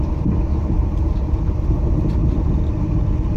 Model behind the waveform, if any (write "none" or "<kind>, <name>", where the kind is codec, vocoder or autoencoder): none